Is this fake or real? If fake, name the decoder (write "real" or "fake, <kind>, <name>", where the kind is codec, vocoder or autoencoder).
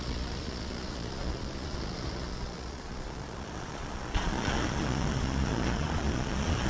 fake, vocoder, Vocos